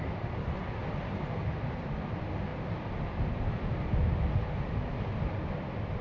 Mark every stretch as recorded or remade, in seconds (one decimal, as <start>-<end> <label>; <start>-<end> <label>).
0.0-6.0 recorded